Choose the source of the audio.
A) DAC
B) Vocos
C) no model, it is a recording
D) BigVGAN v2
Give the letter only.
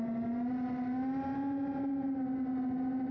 C